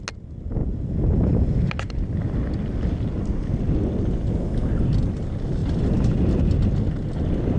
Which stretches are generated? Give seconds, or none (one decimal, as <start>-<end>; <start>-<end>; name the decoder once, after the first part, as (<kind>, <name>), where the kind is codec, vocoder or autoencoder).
0.6-3.6 (vocoder, BigVGAN v2); 5.6-6.5